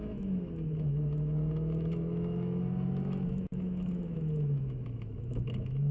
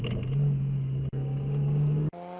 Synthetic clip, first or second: first